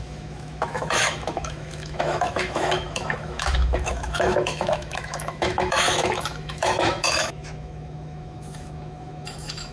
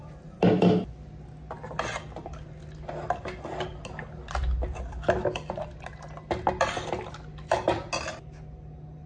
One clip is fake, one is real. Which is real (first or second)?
second